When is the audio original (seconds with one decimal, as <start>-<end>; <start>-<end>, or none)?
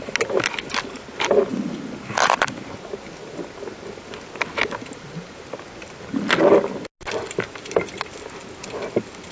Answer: 0.0-9.3